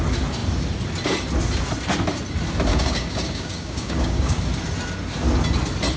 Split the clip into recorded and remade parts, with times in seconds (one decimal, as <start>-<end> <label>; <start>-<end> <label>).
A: 0.0-2.7 recorded; 2.7-4.4 remade; 4.4-6.0 recorded